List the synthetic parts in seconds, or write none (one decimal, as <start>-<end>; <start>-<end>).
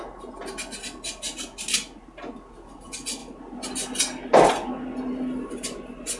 none